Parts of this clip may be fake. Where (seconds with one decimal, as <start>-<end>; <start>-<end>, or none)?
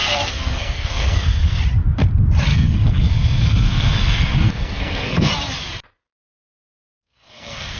0.0-1.6; 2.5-5.3; 6.8-7.8